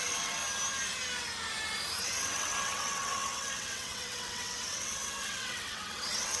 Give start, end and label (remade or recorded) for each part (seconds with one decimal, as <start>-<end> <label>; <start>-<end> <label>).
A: 0.0-0.4 remade; 0.4-2.0 recorded; 2.0-6.4 remade